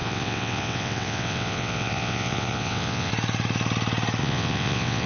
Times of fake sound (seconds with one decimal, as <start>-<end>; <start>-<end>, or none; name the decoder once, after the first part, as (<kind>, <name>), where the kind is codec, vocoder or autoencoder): 0.0-3.1 (vocoder, WaveNeXt); 4.2-5.1